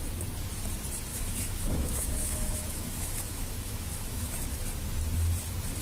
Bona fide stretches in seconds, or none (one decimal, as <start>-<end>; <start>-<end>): 0.0-1.1; 4.6-5.8